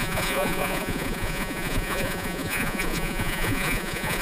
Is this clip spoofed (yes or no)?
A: yes